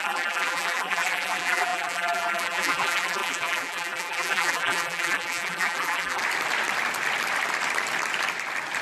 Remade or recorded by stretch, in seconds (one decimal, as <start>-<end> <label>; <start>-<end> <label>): 0.0-6.2 remade; 6.2-8.8 recorded